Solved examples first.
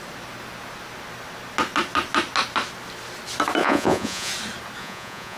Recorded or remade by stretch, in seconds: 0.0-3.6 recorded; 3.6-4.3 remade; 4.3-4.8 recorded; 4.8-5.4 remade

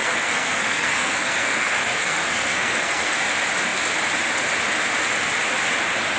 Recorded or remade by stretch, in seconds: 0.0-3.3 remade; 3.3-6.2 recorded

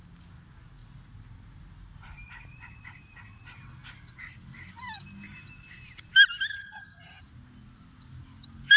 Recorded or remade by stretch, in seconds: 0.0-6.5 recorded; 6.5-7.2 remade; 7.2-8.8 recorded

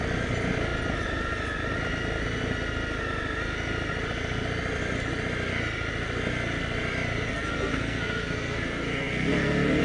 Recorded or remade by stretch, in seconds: 0.0-7.3 recorded; 7.3-9.8 remade

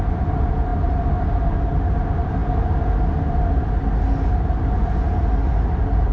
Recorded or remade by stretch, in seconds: 0.0-6.1 recorded

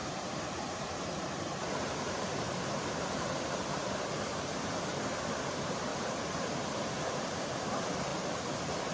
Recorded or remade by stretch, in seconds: 0.0-3.0 remade; 3.0-5.9 recorded; 5.9-7.7 remade; 7.7-8.9 recorded

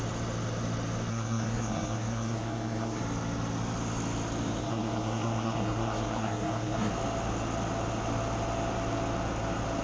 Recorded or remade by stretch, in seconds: 0.0-1.1 recorded; 1.1-3.0 remade; 3.0-4.6 recorded; 4.6-6.9 remade; 6.9-9.8 recorded

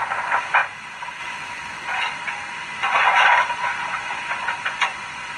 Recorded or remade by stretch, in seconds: 0.0-0.6 remade; 0.6-1.2 recorded; 1.2-5.4 remade